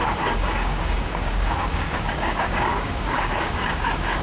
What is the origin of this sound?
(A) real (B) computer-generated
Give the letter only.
B